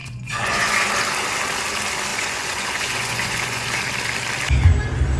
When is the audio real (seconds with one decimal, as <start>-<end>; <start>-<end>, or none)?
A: 0.9-2.1; 3.8-5.2